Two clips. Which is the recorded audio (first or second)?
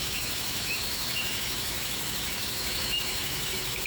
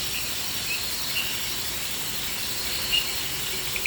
second